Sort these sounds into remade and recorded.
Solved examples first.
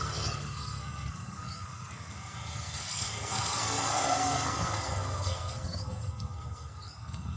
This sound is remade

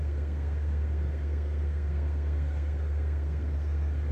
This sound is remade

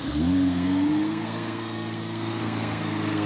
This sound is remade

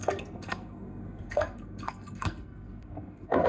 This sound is remade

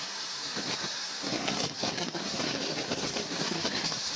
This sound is remade